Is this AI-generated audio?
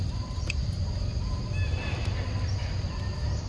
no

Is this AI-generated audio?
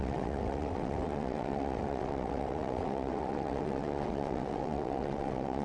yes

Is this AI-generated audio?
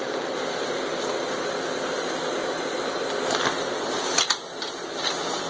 no